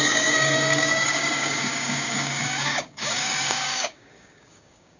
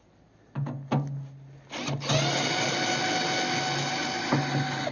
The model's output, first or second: first